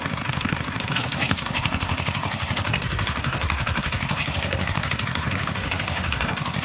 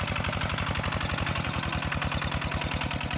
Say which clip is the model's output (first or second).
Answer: first